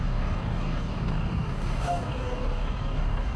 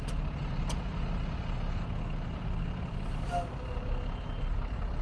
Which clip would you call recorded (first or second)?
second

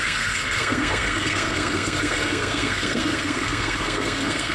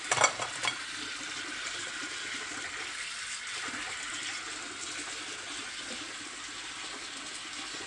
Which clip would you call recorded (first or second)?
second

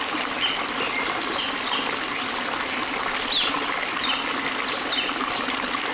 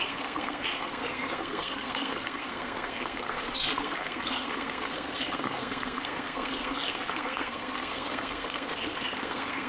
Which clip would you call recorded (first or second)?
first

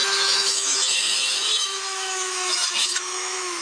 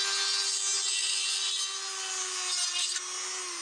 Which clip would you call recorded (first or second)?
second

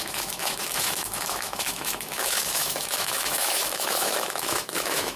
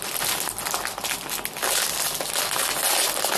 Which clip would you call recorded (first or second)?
second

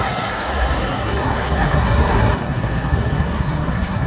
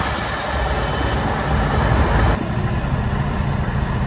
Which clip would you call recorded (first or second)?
second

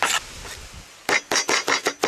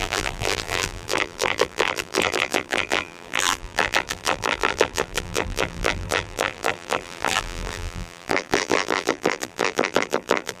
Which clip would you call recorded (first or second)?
first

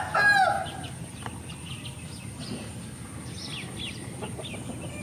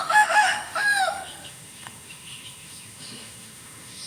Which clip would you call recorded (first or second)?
first